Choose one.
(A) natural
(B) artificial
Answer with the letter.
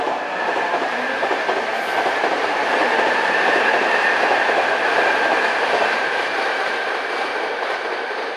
B